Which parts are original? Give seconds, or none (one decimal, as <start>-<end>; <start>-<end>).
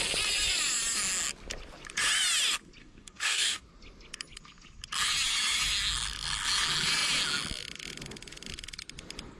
0.0-2.8; 3.6-9.4